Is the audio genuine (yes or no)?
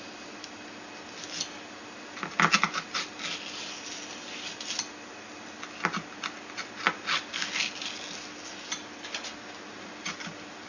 yes